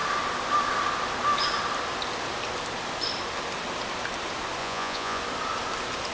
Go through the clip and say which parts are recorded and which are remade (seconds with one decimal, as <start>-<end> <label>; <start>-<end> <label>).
0.0-4.6 recorded; 4.6-5.2 remade; 5.2-6.1 recorded